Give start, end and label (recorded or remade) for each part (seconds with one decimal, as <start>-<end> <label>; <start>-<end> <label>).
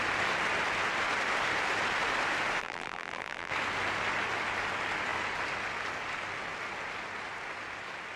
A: 0.0-2.6 recorded; 2.6-3.5 remade; 3.5-8.2 recorded